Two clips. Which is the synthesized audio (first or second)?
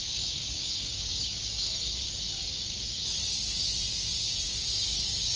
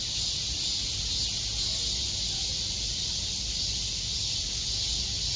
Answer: first